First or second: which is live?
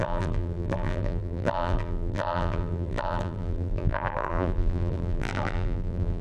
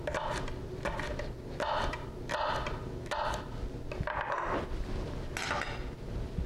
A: second